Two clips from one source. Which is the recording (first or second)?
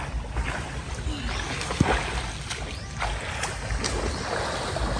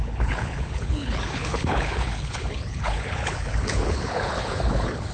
first